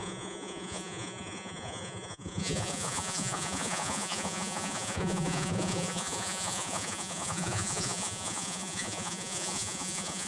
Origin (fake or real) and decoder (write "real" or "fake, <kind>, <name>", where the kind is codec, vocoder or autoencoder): fake, vocoder, Vocos